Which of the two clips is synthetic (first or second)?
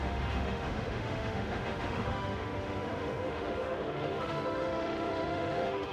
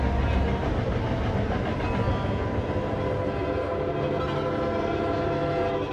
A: first